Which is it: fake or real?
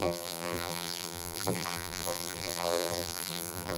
fake